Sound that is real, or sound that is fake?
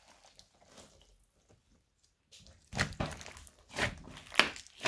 real